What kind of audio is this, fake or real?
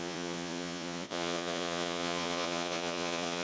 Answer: fake